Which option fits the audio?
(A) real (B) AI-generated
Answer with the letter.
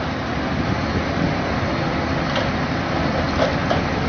A